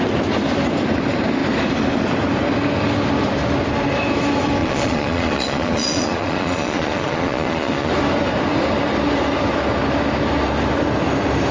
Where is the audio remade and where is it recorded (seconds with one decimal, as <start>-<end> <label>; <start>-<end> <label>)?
0.0-4.6 recorded; 4.6-7.9 remade; 7.9-11.5 recorded